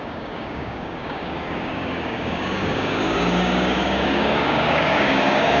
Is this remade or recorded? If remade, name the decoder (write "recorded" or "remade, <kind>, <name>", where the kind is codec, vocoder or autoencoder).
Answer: remade, codec, DAC